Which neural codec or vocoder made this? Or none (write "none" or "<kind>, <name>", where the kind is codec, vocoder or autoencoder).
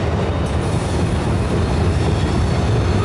none